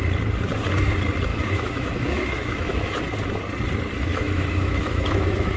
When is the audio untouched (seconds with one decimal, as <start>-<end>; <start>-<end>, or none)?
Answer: 0.0-1.3; 3.0-4.1